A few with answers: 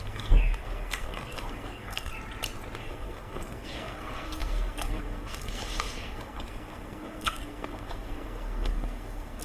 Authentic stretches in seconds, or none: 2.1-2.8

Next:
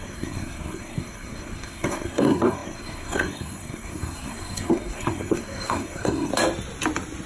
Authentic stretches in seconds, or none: 6.3-7.3

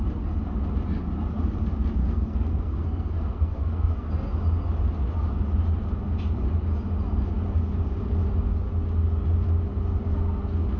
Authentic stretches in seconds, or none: 0.0-2.0; 4.1-10.8

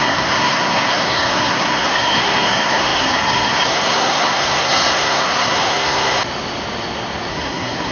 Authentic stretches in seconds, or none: 6.2-7.3

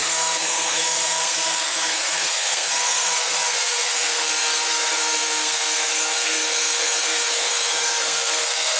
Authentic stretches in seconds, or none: none